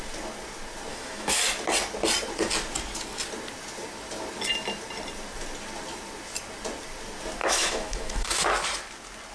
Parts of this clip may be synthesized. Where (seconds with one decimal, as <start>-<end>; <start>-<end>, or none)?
0.9-1.4; 7.4-8.5